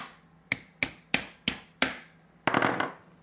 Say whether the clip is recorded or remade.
recorded